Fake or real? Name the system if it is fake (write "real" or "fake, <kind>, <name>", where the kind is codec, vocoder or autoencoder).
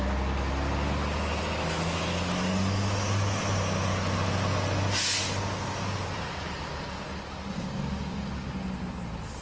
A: real